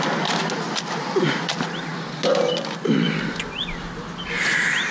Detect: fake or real real